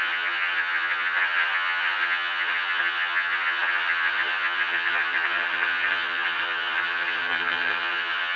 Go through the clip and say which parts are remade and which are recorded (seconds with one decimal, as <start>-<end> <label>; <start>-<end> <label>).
0.0-8.4 remade